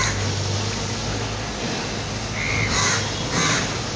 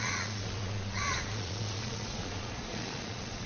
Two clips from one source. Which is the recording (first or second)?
first